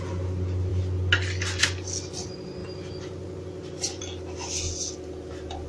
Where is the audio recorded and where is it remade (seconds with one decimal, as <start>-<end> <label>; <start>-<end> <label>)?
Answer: 0.0-5.7 recorded